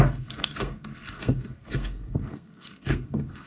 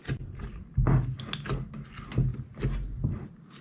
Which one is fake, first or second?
first